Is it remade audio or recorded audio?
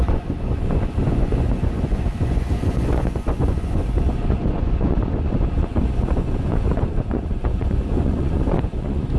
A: remade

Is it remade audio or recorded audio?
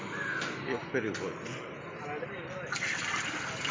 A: recorded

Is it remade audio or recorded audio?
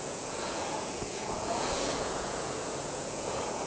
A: remade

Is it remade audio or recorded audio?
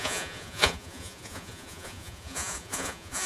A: remade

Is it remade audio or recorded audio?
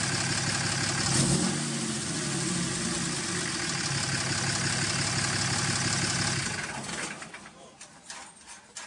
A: recorded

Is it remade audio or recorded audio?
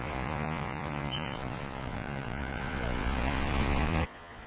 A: remade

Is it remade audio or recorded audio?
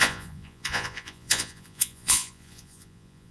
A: remade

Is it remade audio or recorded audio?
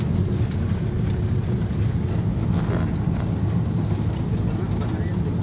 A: recorded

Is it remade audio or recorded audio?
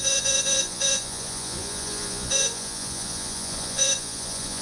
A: remade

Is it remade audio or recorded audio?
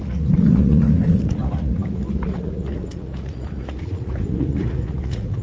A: remade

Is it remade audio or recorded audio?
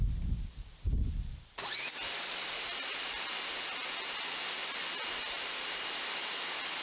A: recorded